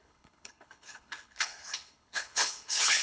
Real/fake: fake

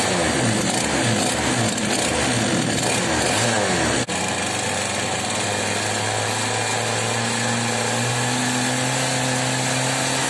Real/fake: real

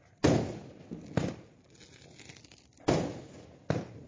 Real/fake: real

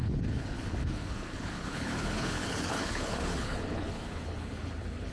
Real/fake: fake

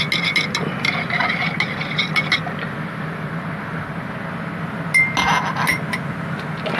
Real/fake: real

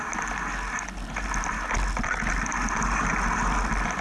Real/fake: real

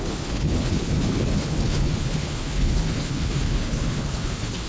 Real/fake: fake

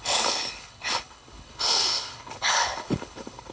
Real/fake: fake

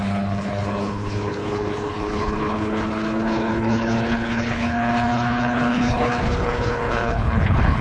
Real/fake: fake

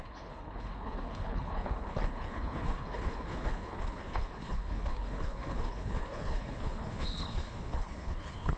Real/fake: fake